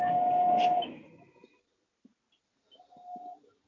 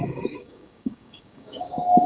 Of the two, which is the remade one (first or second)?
second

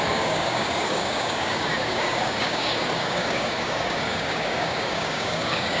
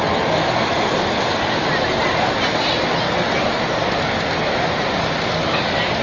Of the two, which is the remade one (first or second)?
first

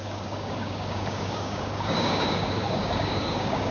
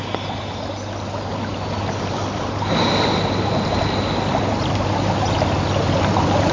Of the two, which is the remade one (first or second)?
first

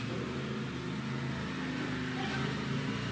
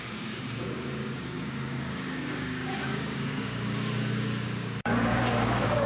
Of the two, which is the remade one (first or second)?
second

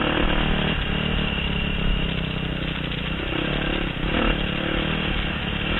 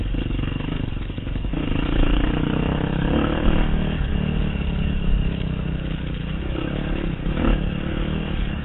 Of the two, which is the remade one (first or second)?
second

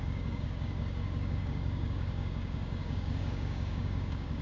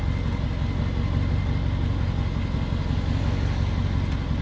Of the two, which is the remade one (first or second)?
first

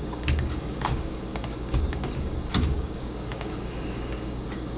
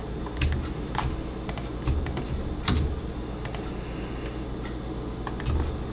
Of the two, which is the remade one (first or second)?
first